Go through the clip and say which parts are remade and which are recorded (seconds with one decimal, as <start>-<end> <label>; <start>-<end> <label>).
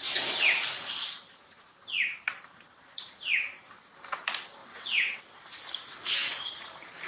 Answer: 0.0-4.6 recorded; 4.6-5.2 remade; 5.2-7.1 recorded